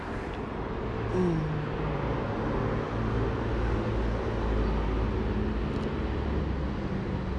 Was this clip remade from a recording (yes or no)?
no